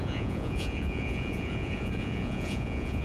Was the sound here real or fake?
fake